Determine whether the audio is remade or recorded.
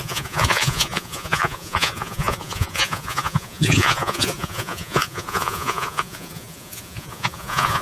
remade